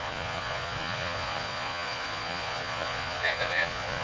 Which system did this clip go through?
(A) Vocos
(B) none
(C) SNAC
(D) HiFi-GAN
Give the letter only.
A